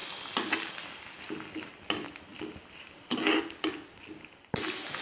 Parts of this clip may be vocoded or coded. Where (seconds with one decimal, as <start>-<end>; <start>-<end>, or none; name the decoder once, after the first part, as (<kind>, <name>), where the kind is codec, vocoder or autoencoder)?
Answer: none